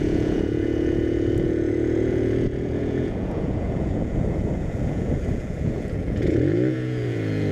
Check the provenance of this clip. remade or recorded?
remade